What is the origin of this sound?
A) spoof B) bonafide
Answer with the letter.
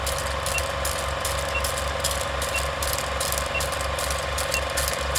B